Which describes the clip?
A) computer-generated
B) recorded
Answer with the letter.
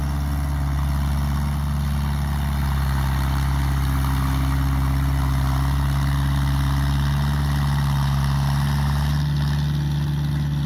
B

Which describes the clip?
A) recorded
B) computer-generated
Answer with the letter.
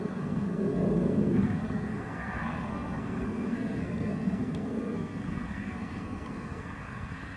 B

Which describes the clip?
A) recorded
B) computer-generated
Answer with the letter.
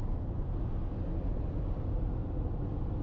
A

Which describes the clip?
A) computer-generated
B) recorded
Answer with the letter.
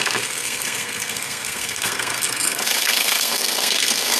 A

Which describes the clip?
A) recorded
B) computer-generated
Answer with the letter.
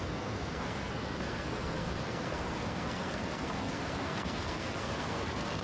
B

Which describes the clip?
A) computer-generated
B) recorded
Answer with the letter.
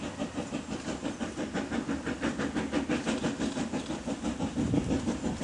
B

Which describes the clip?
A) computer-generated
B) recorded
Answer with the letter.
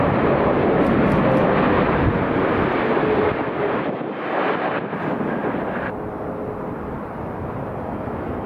B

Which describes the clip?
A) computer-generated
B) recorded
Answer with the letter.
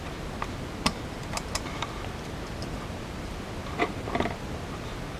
B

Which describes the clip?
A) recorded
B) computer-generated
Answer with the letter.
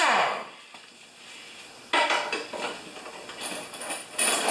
A